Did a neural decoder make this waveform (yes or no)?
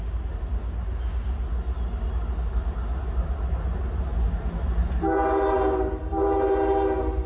no